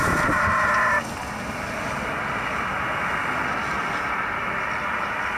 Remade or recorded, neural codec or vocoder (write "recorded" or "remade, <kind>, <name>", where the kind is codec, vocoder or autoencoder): recorded